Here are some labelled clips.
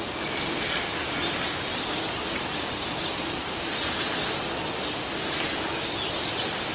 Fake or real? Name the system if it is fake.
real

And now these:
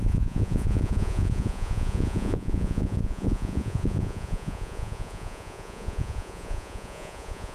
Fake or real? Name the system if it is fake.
fake, vocoder, Vocos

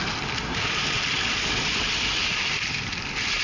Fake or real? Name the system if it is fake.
real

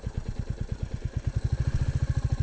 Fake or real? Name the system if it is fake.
real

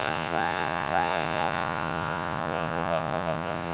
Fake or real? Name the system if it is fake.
fake, vocoder, Vocos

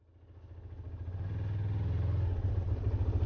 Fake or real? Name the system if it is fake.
real